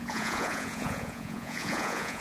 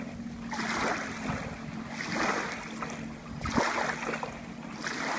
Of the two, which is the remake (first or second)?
first